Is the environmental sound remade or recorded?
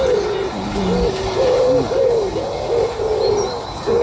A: recorded